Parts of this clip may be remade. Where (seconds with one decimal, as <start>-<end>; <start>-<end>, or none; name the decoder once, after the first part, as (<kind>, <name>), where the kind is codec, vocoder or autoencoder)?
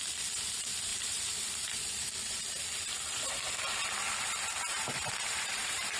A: 0.9-2.1 (vocoder, BigVGAN v2); 4.7-6.0